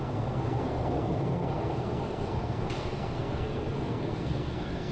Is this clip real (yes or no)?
no